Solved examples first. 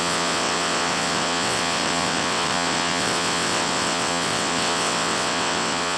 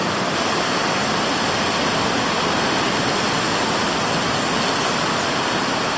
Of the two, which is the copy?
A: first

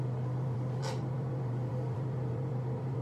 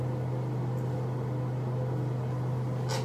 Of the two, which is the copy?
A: first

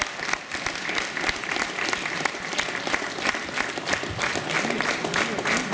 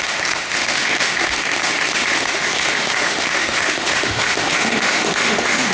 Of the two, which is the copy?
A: second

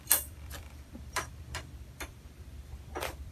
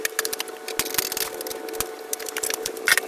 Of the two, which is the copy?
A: first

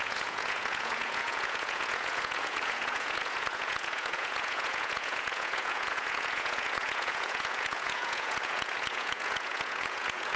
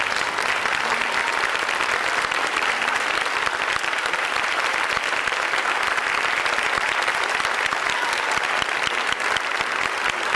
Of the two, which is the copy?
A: first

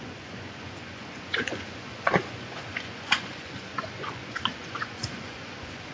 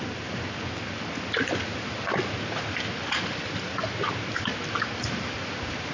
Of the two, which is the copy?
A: first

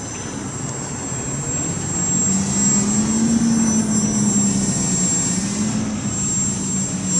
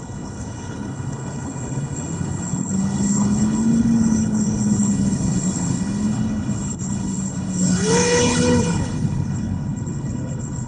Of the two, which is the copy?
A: second